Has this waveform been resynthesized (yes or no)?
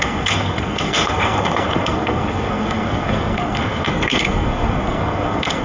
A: yes